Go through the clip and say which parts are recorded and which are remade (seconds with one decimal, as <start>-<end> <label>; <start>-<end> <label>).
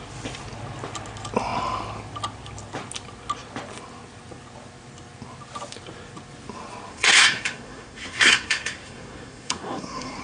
0.0-6.9 recorded; 6.9-10.2 remade